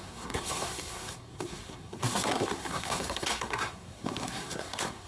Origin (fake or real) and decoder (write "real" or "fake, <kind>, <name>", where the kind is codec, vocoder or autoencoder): fake, codec, SNAC